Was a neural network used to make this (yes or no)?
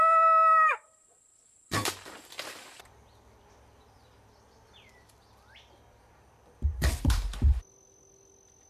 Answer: yes